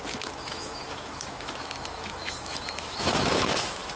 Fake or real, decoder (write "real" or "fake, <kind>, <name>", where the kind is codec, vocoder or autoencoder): fake, autoencoder, DAC-VAE